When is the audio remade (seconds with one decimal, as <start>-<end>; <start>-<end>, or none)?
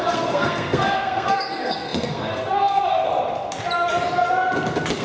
0.0-3.1